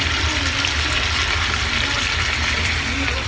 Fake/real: real